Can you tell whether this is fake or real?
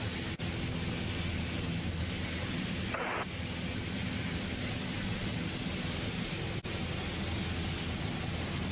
real